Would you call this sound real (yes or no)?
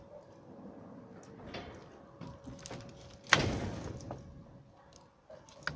yes